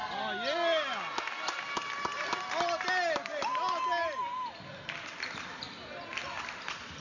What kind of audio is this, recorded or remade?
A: recorded